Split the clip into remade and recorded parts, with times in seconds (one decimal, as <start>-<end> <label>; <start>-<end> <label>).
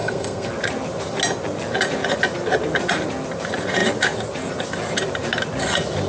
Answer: 0.0-0.5 remade; 0.5-6.1 recorded